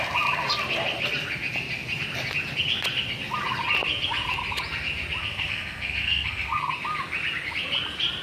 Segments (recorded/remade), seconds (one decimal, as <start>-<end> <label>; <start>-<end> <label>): 0.0-5.2 recorded; 5.2-6.6 remade; 6.6-8.2 recorded